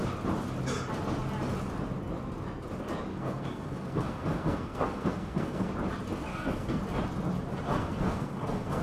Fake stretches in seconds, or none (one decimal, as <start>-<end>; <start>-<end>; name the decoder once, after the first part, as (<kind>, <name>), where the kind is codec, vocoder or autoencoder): 3.1-5.7 (codec, SNAC); 6.3-6.8; 7.5-8.8